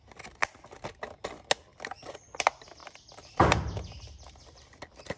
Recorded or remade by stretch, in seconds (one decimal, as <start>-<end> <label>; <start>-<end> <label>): 0.0-5.2 recorded